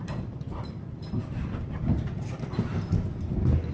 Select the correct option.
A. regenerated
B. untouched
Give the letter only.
B